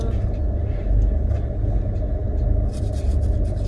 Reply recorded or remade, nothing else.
recorded